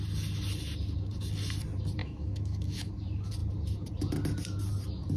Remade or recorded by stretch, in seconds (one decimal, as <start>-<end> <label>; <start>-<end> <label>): 0.0-2.0 recorded; 2.0-2.9 remade; 2.9-5.2 recorded